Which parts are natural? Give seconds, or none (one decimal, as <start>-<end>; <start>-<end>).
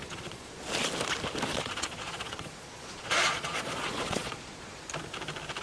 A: 0.6-1.5; 4.9-5.6